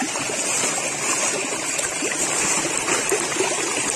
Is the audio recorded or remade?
recorded